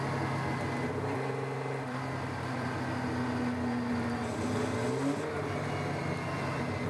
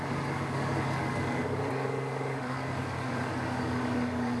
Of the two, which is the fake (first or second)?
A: second